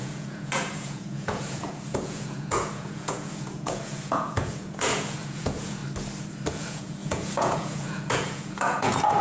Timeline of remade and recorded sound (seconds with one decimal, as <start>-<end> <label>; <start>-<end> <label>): 0.0-5.8 remade; 5.8-6.5 recorded; 6.5-9.2 remade